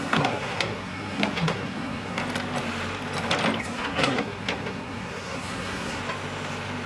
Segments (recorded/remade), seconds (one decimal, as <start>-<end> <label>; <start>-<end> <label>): 0.0-2.2 remade; 2.2-3.6 recorded; 3.6-6.0 remade; 6.0-6.9 recorded